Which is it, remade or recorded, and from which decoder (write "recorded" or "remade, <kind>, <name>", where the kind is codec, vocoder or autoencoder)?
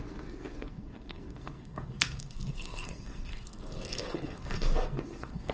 remade, codec, SNAC